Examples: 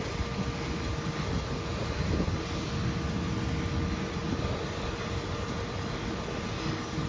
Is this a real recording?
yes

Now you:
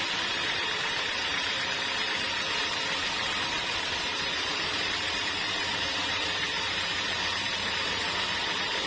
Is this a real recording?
no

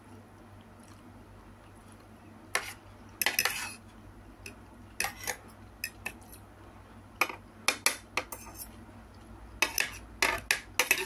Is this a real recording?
yes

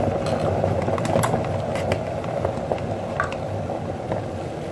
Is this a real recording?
yes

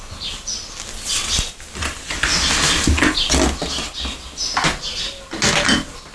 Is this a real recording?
yes